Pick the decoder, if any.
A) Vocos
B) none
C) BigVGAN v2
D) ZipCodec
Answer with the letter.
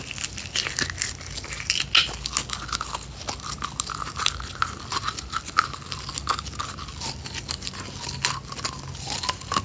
B